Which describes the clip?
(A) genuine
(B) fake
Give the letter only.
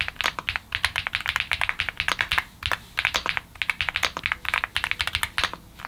A